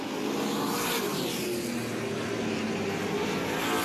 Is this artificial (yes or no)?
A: no